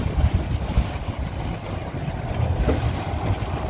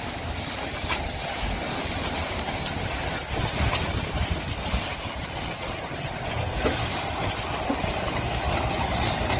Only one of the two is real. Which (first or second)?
second